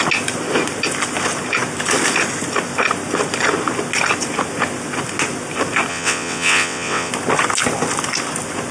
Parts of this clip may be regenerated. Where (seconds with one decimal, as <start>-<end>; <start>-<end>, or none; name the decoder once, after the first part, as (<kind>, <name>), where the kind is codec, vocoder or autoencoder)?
5.9-7.1 (vocoder, WaveNeXt)

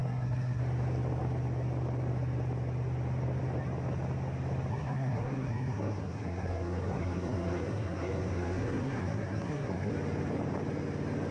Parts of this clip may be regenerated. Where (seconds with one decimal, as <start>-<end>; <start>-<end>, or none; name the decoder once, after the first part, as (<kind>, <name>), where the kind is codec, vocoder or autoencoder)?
0.0-0.6 (codec, SNAC); 4.7-9.9

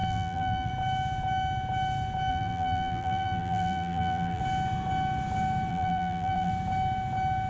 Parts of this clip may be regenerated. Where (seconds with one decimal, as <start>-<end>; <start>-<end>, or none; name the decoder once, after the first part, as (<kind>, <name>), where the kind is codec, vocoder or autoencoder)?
0.0-0.7 (vocoder, BigVGAN v2); 2.3-4.4; 5.7-6.5

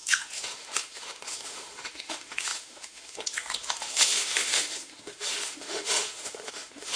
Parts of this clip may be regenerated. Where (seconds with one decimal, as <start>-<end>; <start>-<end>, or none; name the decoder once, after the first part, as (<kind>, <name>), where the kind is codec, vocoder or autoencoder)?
0.0-7.0 (autoencoder, DAC-VAE)

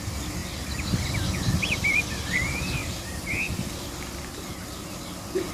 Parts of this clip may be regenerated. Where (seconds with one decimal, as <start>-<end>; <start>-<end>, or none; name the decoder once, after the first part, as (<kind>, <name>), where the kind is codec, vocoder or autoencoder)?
none

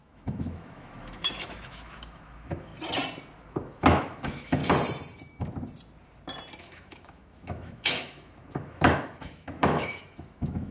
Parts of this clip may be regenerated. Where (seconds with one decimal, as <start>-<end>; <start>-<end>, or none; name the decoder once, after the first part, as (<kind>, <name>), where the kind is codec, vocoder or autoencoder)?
0.0-2.7 (autoencoder, DAC-VAE); 3.5-4.6; 6.6-10.7

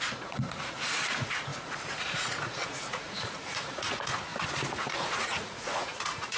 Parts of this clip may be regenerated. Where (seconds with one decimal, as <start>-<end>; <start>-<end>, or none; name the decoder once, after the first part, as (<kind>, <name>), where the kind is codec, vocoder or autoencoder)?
0.0-6.4 (vocoder, Vocos)